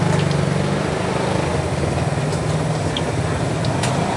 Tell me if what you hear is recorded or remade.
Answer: recorded